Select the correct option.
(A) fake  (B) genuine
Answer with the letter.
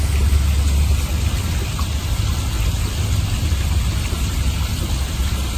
B